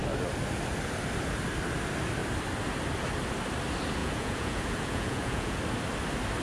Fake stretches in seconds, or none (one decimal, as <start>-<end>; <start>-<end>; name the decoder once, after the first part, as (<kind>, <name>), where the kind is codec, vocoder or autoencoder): 4.0-5.6 (vocoder, Vocos)